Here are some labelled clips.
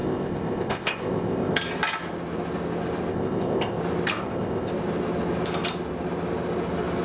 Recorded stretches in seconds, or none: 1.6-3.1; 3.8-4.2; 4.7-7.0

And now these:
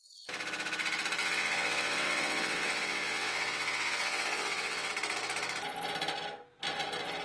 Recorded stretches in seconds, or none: 0.0-1.2; 4.9-7.2